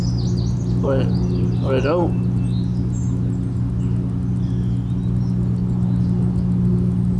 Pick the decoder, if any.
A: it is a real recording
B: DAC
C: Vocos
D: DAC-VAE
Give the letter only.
A